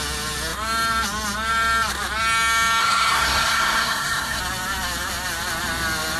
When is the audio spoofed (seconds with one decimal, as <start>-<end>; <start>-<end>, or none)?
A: 2.8-4.4

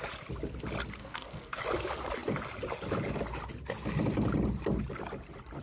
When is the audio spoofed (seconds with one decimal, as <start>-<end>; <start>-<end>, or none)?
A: 1.0-1.6